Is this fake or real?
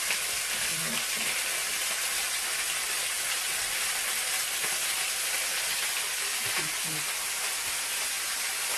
real